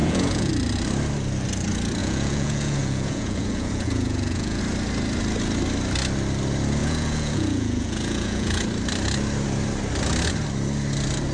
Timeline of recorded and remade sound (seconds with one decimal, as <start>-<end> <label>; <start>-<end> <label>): 0.0-0.5 remade; 0.5-2.0 recorded; 2.0-4.6 remade; 4.6-6.8 recorded; 6.8-8.6 remade; 8.6-11.3 recorded